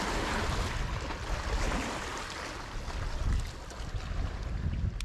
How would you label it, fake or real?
real